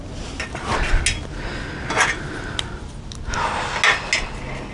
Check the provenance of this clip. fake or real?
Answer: real